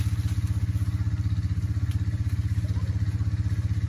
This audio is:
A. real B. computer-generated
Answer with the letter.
A